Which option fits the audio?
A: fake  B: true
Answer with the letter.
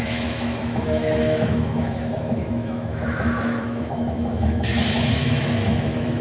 A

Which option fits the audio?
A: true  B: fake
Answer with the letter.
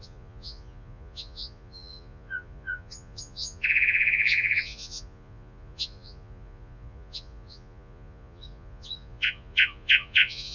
B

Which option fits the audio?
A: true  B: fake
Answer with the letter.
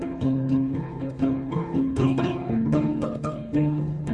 B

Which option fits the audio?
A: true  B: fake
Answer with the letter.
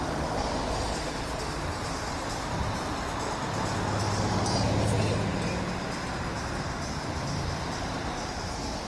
A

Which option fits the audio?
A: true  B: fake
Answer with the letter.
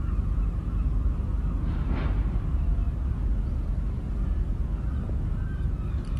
A